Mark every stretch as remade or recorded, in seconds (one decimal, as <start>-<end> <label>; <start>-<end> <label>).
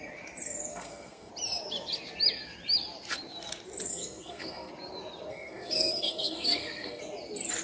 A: 0.0-0.7 recorded; 0.7-1.3 remade; 1.3-3.9 recorded; 3.9-4.7 remade; 4.7-5.3 recorded; 5.3-7.0 remade; 7.0-7.6 recorded